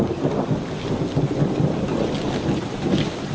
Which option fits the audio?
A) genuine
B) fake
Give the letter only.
A